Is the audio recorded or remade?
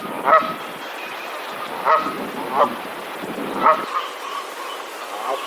recorded